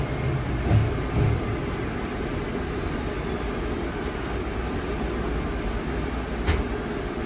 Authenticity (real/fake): real